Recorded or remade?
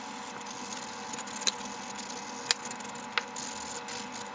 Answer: recorded